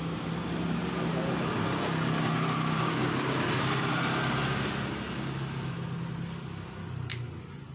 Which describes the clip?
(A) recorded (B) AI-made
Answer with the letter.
A